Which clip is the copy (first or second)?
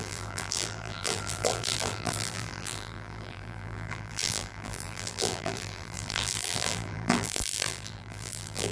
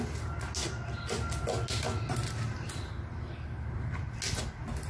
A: first